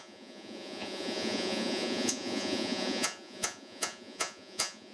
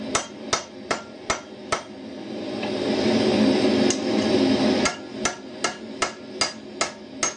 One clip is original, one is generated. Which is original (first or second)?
second